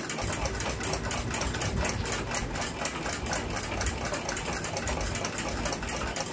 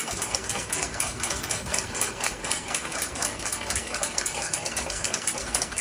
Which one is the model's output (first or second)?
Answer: second